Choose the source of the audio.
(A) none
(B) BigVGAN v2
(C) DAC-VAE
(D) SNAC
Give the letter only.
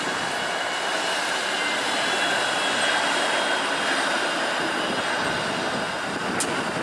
A